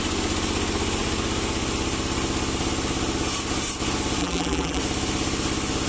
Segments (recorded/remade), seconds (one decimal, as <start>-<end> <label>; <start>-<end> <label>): 0.0-4.2 recorded; 4.2-4.8 remade; 4.8-5.9 recorded